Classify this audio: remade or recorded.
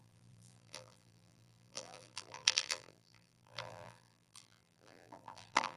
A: remade